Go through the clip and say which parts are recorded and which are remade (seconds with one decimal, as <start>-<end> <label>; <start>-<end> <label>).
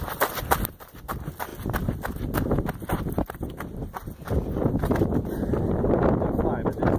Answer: 0.0-1.5 remade; 1.5-5.7 recorded; 5.7-7.0 remade